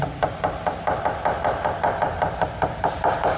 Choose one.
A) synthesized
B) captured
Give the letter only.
B